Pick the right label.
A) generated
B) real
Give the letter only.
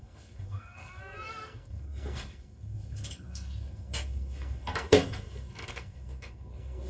A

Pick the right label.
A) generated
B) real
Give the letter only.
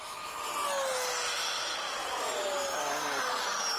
B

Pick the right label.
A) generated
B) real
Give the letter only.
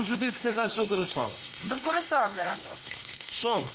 A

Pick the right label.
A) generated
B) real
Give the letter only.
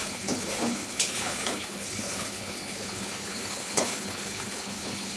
A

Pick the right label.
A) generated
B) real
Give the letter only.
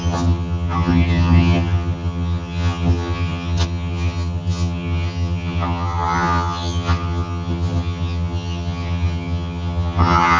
A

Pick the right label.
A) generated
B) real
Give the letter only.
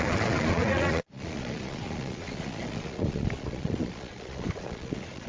A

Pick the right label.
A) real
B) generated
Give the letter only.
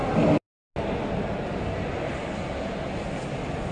A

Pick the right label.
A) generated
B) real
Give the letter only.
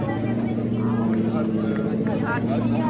B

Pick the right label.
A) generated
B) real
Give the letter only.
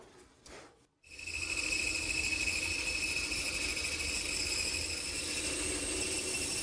B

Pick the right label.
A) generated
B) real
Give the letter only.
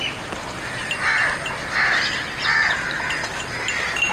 B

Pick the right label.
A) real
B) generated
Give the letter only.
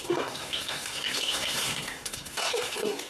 B